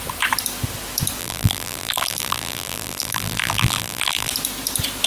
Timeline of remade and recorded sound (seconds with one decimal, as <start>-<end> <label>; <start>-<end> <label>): 0.0-1.2 recorded; 1.2-4.3 remade; 4.3-5.1 recorded